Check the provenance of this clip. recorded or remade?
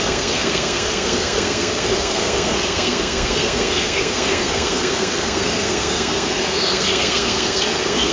remade